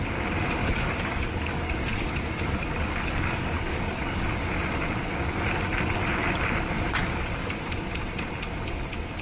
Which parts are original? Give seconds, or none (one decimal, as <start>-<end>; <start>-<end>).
0.0-0.6; 4.2-7.0; 7.6-9.2